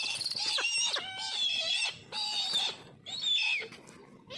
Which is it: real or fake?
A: real